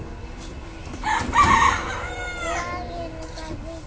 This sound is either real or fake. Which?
real